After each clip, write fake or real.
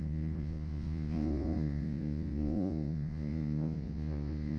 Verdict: fake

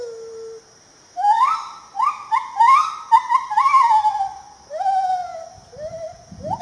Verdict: real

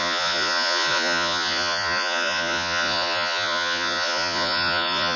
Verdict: fake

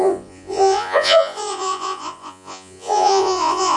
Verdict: fake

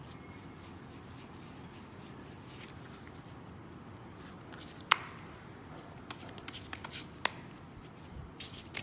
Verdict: real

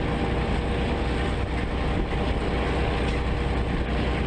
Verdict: real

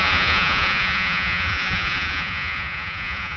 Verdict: fake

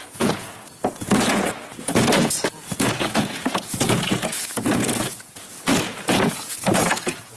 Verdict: fake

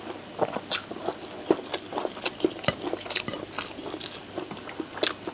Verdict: real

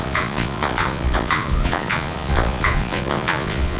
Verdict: fake